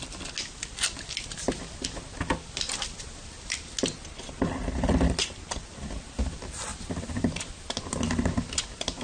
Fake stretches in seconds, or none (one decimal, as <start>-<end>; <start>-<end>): 6.7-7.8